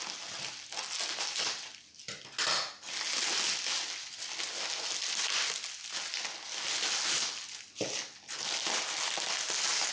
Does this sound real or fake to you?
real